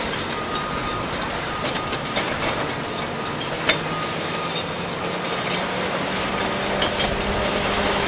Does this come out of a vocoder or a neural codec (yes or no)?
no